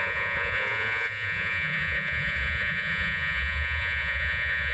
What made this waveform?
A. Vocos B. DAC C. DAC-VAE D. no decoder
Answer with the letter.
A